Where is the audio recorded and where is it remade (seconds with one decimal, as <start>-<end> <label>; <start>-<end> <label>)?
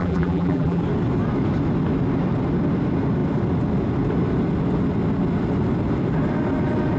0.0-0.8 remade; 0.8-7.0 recorded